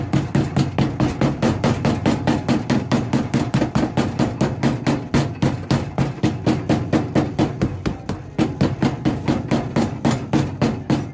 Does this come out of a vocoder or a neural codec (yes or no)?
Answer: no